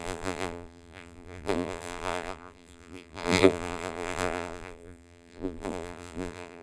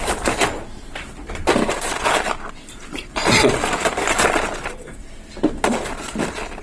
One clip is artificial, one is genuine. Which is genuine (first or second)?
second